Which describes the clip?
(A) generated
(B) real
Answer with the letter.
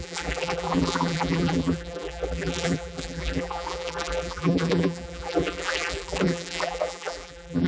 A